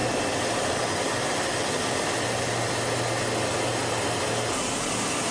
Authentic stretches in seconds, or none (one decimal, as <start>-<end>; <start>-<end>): 0.0-5.3